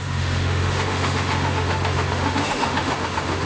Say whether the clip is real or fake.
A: fake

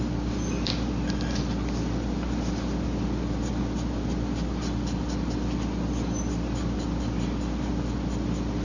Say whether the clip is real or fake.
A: real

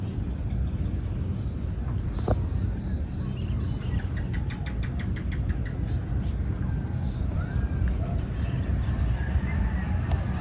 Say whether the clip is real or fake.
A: real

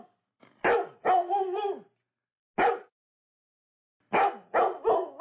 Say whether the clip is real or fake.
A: real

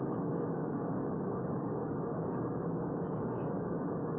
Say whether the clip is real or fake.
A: fake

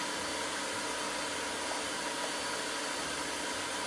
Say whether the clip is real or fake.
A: real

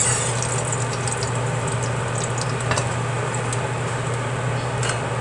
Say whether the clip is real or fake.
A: real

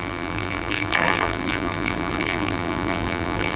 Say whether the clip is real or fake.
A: fake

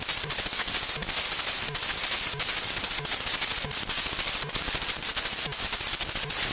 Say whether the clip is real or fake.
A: real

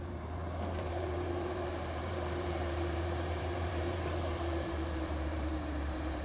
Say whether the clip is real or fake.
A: fake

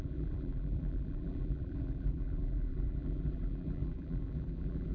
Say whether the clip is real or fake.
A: fake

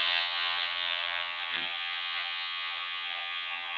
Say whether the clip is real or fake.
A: fake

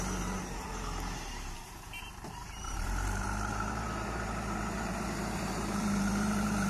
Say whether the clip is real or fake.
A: fake